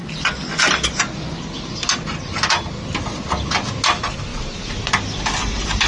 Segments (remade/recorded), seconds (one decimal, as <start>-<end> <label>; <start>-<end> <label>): 0.0-5.9 recorded